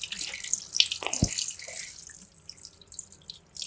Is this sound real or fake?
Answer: real